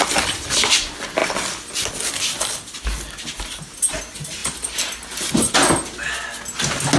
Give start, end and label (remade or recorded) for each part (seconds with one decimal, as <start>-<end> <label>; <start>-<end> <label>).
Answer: 0.0-4.4 recorded; 4.4-5.3 remade; 5.3-7.0 recorded